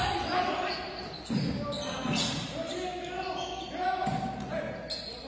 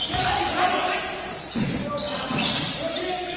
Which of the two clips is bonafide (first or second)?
first